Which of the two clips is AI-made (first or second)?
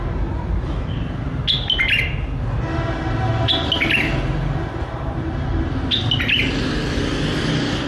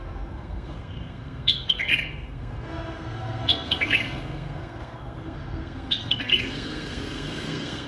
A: second